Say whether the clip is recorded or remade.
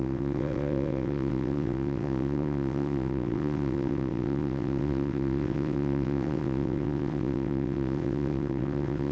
remade